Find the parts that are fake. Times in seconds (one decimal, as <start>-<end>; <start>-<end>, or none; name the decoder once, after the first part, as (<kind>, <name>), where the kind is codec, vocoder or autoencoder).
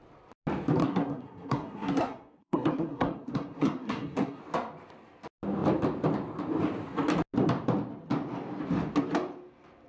0.8-4.4 (codec, SNAC)